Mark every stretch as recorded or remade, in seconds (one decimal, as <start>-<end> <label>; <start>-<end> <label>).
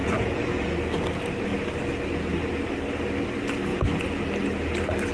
0.0-0.6 remade; 0.6-3.7 recorded; 3.7-4.2 remade; 4.2-5.1 recorded